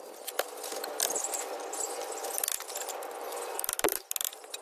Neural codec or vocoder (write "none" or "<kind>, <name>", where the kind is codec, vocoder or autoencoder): none